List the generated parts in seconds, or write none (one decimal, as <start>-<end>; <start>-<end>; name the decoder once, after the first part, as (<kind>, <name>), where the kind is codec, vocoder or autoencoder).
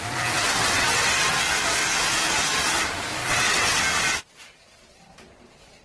0.6-1.3 (vocoder, WaveNeXt); 3.2-3.8